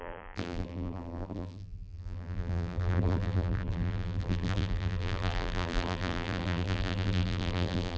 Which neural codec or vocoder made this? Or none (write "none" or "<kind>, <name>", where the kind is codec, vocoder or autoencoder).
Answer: vocoder, BigVGAN v2